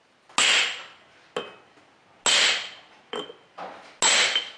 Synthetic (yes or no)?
no